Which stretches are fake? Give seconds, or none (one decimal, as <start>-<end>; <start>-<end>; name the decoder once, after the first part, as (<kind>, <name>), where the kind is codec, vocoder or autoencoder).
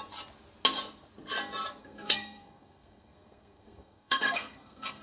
1.8-5.0 (codec, SNAC)